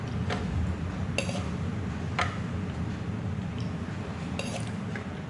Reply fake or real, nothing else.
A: real